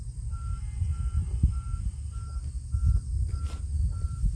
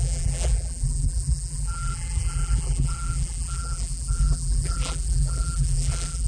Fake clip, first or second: second